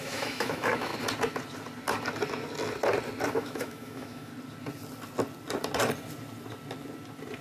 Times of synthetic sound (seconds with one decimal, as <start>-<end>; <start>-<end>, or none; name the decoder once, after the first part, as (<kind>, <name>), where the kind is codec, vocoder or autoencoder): 0.0-0.9 (autoencoder, DAC-VAE); 3.3-4.3